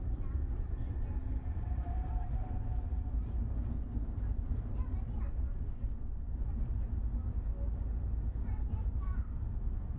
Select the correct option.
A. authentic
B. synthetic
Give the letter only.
A